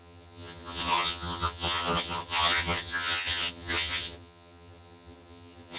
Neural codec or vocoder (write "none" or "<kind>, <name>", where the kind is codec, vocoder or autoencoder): vocoder, HiFi-GAN